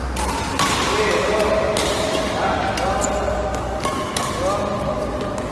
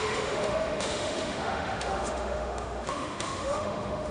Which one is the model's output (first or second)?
second